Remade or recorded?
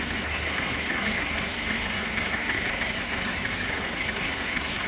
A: remade